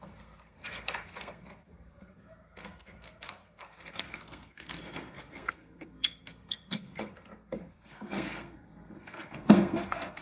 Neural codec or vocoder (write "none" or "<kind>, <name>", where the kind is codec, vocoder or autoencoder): codec, SNAC